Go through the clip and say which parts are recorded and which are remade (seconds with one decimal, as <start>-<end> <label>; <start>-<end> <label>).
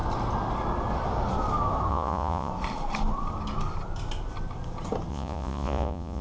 0.0-1.9 recorded; 1.9-2.5 remade; 2.5-5.1 recorded; 5.1-6.2 remade